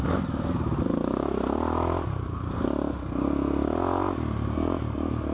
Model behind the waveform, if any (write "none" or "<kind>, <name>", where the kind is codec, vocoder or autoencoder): none